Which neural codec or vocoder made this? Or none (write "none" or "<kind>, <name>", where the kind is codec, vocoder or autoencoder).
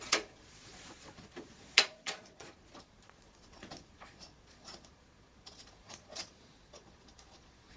vocoder, Vocos